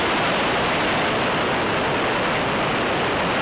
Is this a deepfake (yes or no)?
no